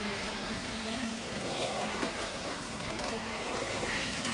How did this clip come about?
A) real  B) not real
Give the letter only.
B